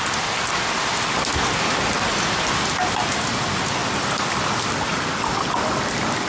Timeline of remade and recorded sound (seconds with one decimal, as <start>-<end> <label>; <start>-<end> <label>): 0.0-6.3 recorded